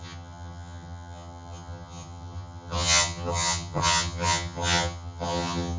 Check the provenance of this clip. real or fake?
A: fake